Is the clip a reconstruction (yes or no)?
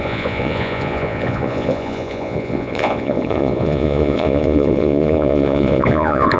yes